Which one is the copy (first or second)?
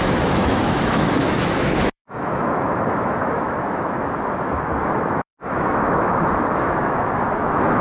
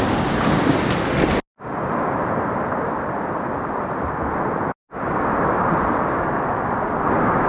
first